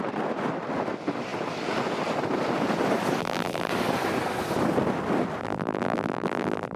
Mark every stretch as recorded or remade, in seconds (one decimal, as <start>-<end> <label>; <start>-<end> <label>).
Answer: 0.0-3.2 recorded; 3.2-3.7 remade; 3.7-5.4 recorded; 5.4-6.8 remade